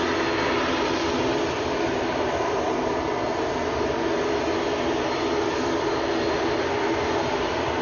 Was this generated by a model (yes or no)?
no